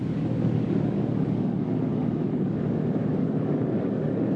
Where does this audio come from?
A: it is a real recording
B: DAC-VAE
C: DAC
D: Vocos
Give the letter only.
C